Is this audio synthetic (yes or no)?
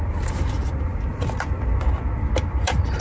no